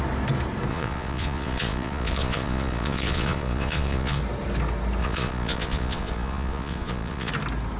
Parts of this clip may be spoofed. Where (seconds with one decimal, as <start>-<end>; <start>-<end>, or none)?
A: 0.7-4.2; 5.0-7.3